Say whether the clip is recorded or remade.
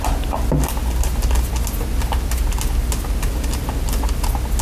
recorded